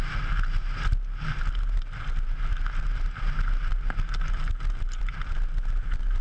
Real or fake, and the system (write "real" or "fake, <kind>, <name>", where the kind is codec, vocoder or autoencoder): real